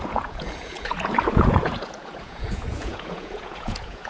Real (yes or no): no